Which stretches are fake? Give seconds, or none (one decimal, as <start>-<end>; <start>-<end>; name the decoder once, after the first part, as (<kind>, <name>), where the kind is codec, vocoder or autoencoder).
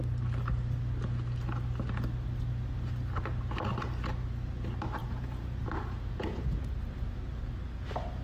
5.0-6.7 (vocoder, Vocos)